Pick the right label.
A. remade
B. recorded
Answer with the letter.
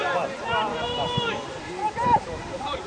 A